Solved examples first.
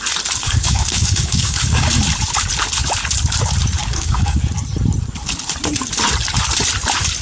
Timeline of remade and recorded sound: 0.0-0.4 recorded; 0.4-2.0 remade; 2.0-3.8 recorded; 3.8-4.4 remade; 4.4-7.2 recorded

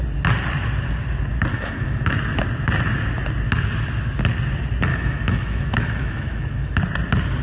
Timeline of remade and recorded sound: 0.0-1.5 recorded; 1.5-2.0 remade; 2.0-4.9 recorded; 4.9-6.8 remade; 6.8-7.4 recorded

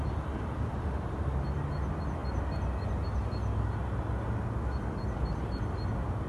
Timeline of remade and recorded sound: 0.0-6.3 recorded

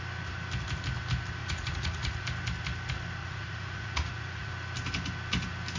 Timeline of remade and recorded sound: 0.0-1.4 recorded; 1.4-2.2 remade; 2.2-3.2 recorded; 3.2-4.5 remade; 4.5-5.8 recorded